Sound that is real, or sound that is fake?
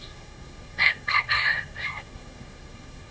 fake